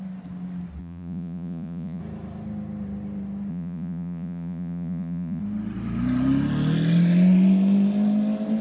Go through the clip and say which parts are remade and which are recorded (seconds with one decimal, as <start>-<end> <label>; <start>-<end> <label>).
0.0-0.8 recorded; 0.8-2.0 remade; 2.0-3.5 recorded; 3.5-5.4 remade; 5.4-8.6 recorded